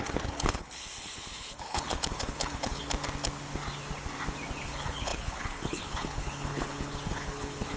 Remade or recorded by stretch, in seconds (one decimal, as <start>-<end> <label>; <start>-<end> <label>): 0.0-2.8 remade; 2.8-4.6 recorded; 4.6-7.8 remade